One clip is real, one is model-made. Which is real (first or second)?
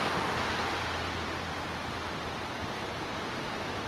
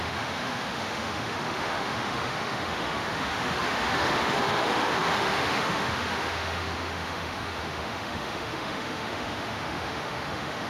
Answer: first